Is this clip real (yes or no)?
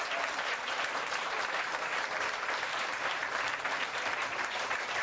no